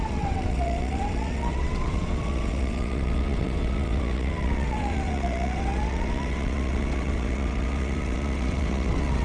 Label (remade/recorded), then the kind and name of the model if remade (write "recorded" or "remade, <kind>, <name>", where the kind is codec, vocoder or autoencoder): remade, vocoder, WaveNeXt